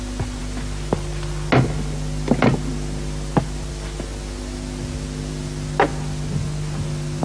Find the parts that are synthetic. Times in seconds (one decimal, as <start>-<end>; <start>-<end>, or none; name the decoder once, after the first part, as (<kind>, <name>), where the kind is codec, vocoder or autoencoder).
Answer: none